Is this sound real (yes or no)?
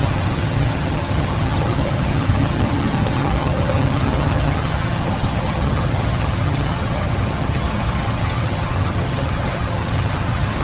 no